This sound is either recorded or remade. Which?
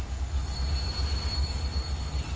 recorded